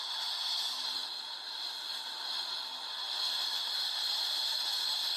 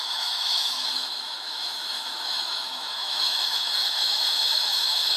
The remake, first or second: second